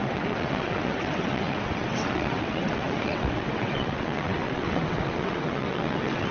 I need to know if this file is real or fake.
fake